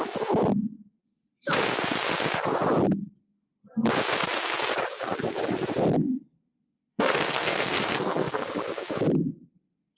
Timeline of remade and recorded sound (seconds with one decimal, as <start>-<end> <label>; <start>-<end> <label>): 0.0-6.9 recorded; 6.9-8.5 remade; 8.5-10.0 recorded

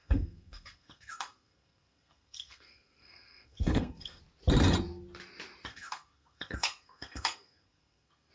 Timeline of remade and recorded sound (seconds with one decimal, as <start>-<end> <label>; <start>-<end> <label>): 0.0-4.2 remade; 4.2-5.7 recorded; 5.7-8.3 remade